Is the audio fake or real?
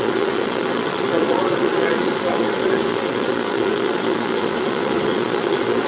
fake